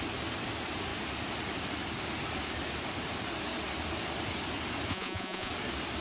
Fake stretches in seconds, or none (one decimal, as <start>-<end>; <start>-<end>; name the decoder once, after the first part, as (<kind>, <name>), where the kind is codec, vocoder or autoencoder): 4.9-5.5 (vocoder, Vocos)